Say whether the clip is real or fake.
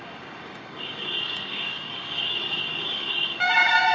fake